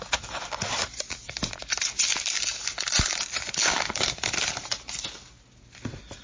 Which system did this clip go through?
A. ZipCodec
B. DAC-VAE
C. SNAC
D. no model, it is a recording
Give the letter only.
D